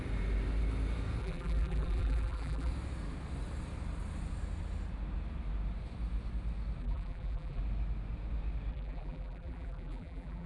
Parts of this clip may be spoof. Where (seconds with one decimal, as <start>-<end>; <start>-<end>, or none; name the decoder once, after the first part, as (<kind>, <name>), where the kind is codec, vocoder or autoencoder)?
1.2-2.7 (vocoder, BigVGAN v2); 6.8-7.6; 8.7-10.5